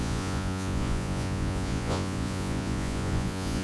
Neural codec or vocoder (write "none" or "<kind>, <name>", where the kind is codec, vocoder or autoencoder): vocoder, Vocos